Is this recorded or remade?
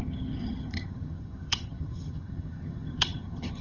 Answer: remade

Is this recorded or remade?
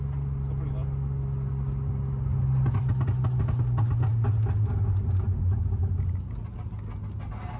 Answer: recorded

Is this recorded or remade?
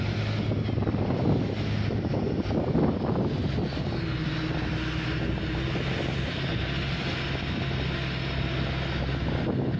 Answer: recorded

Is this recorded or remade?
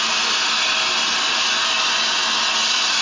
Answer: recorded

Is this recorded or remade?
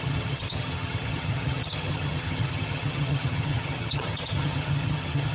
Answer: remade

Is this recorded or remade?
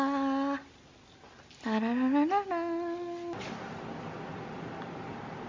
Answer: recorded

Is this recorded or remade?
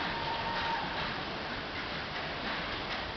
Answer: recorded